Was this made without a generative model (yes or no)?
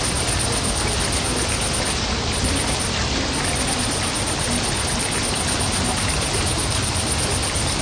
yes